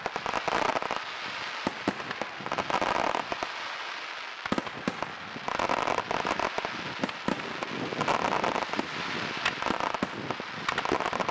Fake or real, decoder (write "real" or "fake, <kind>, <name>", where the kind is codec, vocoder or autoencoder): real